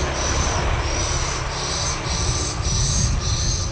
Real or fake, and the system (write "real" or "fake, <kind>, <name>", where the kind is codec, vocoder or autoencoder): real